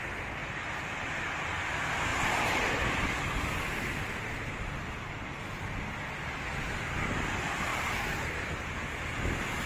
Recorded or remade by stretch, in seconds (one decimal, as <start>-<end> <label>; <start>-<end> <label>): 0.0-9.7 recorded